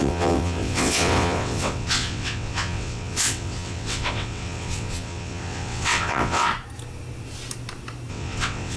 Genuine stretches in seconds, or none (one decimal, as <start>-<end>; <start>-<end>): 6.5-8.1